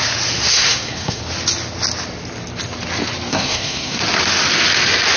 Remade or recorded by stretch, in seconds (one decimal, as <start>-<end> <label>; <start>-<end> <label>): 0.0-0.5 recorded; 0.5-1.2 remade; 1.2-3.3 recorded; 3.3-4.0 remade; 4.0-5.2 recorded